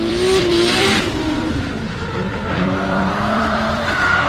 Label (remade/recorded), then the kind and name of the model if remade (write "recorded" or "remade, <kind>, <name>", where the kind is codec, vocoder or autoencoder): remade, vocoder, BigVGAN v2